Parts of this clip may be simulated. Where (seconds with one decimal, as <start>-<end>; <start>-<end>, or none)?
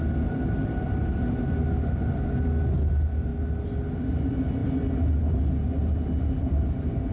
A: none